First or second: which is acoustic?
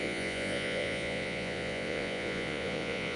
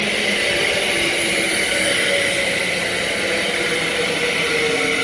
second